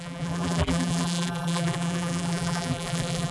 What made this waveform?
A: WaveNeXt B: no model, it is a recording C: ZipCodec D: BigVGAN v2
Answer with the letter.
D